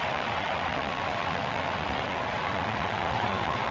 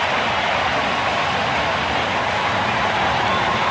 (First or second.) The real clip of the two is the second